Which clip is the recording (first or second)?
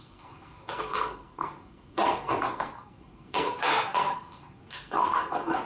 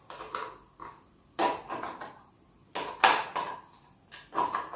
second